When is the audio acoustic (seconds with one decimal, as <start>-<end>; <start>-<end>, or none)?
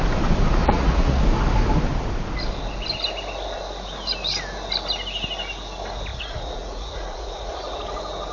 0.0-0.6; 1.2-6.1; 7.5-8.3